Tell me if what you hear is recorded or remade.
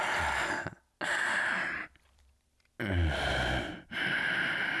recorded